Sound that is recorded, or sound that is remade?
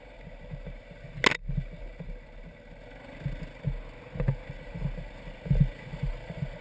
recorded